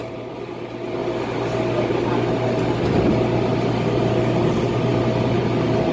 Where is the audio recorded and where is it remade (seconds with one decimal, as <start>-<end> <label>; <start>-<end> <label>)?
0.0-1.0 remade; 1.0-4.2 recorded; 4.2-4.9 remade; 4.9-5.9 recorded